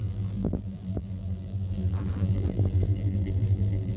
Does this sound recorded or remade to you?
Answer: remade